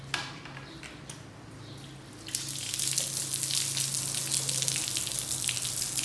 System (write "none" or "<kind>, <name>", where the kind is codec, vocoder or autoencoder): none